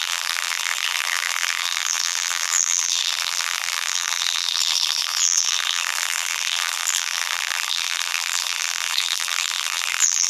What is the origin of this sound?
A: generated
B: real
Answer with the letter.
A